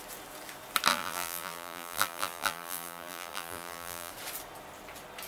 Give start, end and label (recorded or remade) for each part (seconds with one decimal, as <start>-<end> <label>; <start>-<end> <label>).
0.0-0.9 recorded; 0.9-4.1 remade; 4.1-5.3 recorded